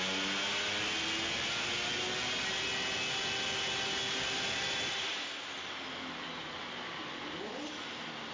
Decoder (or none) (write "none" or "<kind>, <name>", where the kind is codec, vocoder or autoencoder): none